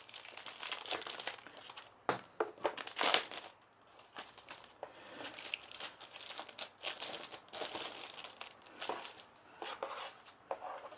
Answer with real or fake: real